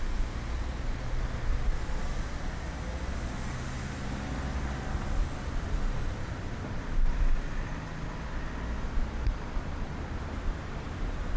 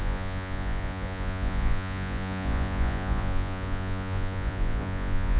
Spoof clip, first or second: second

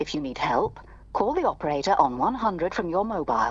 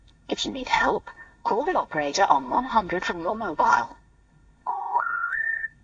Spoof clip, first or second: second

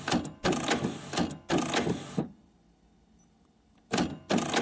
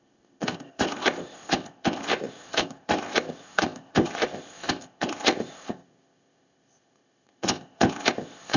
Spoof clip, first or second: second